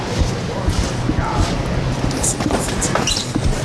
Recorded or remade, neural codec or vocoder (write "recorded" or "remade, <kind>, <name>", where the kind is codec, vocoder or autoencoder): recorded